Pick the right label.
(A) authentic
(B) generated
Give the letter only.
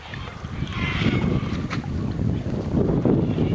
A